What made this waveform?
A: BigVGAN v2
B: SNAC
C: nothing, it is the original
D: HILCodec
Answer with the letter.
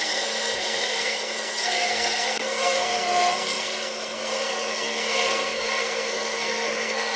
B